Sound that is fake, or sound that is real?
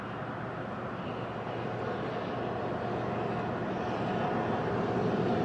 real